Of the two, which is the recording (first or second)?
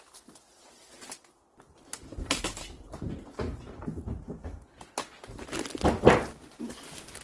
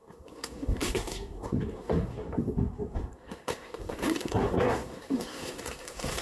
first